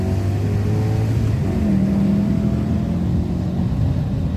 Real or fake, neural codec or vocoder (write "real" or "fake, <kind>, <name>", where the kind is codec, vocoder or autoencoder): real